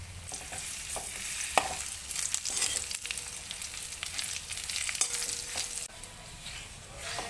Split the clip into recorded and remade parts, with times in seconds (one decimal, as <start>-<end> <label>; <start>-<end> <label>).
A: 0.0-7.3 recorded